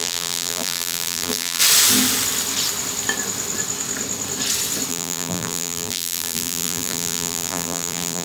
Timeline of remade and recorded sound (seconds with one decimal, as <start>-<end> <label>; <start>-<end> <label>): 0.0-1.6 remade; 1.6-4.9 recorded; 4.9-8.2 remade